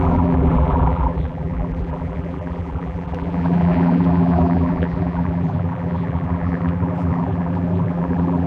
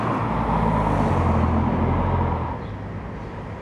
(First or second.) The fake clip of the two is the first